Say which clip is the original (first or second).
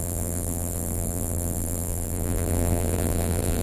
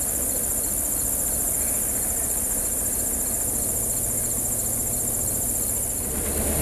second